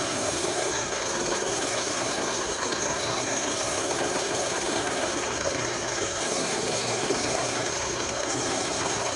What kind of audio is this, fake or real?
fake